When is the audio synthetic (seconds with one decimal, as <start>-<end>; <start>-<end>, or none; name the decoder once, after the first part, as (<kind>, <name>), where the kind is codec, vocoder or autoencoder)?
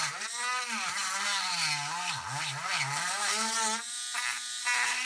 none